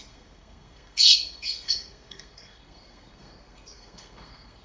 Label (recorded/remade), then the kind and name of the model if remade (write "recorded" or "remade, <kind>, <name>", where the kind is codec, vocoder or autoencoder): remade, codec, SNAC